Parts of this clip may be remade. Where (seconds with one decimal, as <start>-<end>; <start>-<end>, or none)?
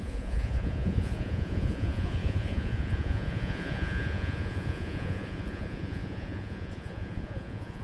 0.0-7.8